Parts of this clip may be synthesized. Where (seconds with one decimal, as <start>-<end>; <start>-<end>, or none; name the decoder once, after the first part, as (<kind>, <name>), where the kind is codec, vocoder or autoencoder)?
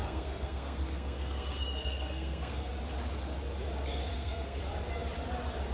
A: 0.0-2.7 (codec, SNAC); 4.1-4.6